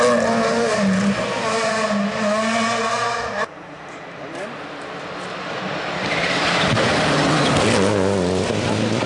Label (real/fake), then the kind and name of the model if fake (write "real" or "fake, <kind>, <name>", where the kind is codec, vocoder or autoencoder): real